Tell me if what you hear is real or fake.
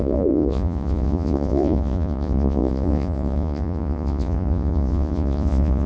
fake